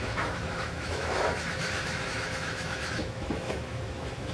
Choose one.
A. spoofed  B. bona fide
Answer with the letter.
A